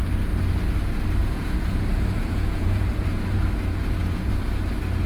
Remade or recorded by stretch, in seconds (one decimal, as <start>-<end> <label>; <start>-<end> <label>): 0.0-1.2 recorded; 1.2-4.3 remade; 4.3-5.1 recorded